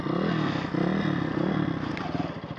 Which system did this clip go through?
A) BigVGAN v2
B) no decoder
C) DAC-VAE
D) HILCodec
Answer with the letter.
B